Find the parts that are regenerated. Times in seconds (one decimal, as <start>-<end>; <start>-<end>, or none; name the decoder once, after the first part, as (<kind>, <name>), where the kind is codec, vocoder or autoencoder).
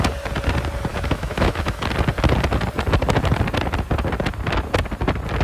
0.9-1.8 (autoencoder, DAC-VAE)